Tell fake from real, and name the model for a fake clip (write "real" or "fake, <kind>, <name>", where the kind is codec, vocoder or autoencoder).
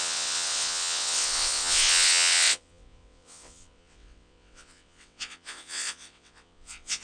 fake, vocoder, WaveNeXt